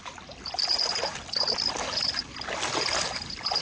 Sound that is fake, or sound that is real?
real